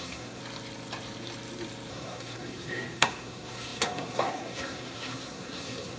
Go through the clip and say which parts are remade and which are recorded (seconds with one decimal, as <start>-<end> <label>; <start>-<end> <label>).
0.0-0.4 remade; 0.4-1.9 recorded; 1.9-6.0 remade